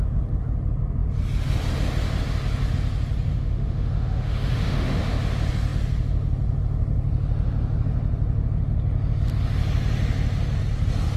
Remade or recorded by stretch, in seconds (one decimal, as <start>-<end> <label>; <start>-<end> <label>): 0.0-3.3 recorded; 3.3-5.0 remade; 5.0-11.2 recorded